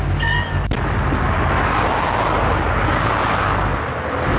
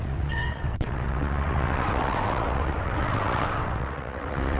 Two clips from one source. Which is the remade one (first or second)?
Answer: second